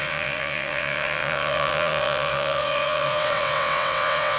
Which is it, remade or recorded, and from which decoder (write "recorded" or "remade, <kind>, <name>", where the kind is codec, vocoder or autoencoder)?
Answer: remade, vocoder, WaveNeXt